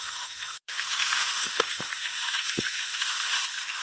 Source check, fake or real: fake